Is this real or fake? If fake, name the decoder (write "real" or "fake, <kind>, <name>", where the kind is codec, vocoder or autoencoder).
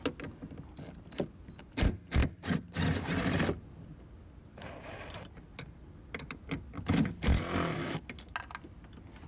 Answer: real